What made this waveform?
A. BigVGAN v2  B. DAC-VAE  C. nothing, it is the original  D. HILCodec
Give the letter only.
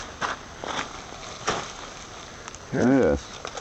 C